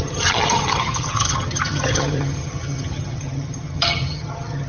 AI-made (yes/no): yes